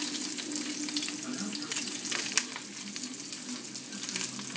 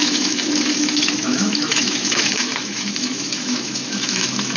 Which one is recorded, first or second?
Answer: first